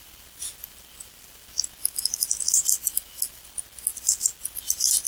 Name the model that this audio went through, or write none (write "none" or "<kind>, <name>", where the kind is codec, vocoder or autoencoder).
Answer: none